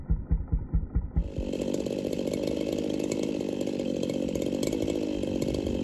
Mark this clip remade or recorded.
remade